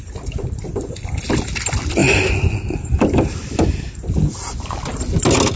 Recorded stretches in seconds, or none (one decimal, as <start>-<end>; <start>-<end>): 0.0-5.6